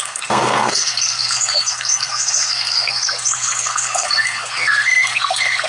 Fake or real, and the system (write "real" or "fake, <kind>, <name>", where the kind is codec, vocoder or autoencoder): fake, codec, SNAC